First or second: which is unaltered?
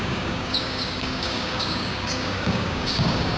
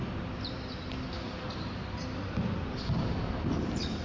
second